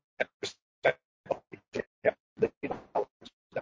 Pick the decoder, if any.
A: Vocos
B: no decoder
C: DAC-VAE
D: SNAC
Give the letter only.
B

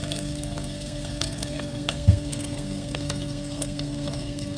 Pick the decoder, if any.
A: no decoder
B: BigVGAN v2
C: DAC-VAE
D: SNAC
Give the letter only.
D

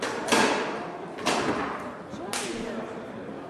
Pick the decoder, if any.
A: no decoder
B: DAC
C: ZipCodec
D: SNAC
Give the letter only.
A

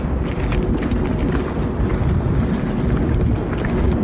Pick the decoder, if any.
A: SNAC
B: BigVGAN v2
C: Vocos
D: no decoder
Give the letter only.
D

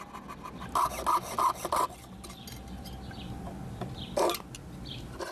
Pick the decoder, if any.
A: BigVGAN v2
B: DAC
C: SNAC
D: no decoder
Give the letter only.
D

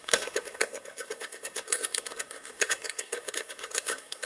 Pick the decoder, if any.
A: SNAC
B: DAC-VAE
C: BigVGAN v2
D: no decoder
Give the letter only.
A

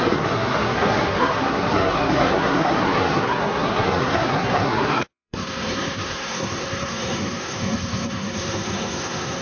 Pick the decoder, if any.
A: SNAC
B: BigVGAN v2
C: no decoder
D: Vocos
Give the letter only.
A